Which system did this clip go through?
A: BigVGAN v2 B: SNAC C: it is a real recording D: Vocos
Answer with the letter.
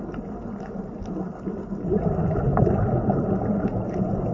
C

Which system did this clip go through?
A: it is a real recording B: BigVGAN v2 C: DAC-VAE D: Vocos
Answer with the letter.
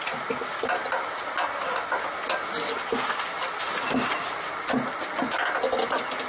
A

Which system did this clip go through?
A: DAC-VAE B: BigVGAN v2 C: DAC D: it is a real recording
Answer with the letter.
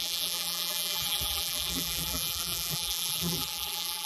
B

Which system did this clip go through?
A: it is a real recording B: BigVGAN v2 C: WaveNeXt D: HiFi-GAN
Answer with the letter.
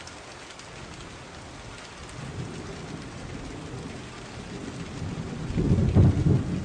A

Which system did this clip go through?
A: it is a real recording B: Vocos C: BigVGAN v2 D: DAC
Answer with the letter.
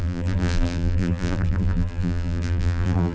C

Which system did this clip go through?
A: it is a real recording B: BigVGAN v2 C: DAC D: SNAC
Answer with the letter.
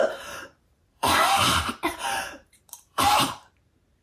B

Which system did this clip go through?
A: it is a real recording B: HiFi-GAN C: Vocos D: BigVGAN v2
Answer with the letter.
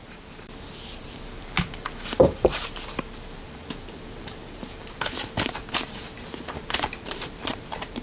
D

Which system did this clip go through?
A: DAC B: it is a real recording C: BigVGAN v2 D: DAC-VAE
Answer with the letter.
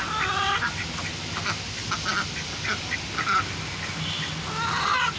B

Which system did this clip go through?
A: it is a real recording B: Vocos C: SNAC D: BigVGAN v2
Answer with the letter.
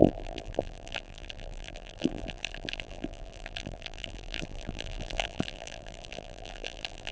D